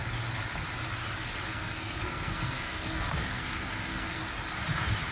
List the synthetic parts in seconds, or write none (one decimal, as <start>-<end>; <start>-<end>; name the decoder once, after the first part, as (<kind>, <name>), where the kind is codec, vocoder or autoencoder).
1.5-4.2 (codec, SNAC)